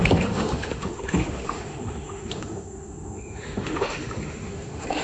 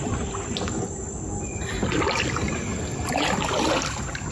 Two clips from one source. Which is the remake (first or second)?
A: first